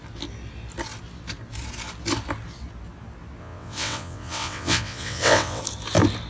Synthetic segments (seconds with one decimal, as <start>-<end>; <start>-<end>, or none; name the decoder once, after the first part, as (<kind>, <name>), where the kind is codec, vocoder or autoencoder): 3.4-5.6 (vocoder, WaveNeXt)